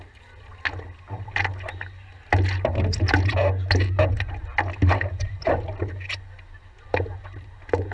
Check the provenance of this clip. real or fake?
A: real